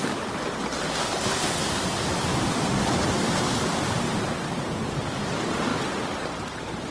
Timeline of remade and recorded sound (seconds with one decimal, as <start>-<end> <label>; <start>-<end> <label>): 0.0-2.3 recorded; 2.3-4.5 remade; 4.5-6.9 recorded